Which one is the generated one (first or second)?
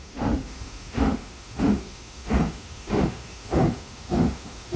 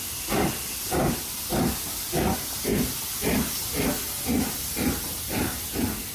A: first